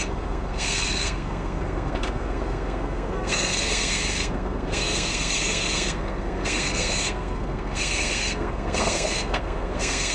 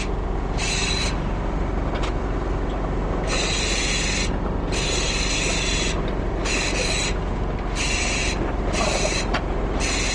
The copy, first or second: first